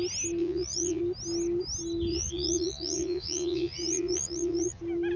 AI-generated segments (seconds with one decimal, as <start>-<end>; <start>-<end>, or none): 0.4-1.0; 2.1-4.8